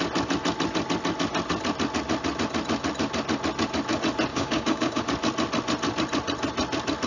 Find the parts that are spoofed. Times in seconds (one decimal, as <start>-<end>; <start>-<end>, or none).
4.3-5.0